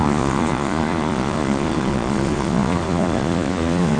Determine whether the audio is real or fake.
fake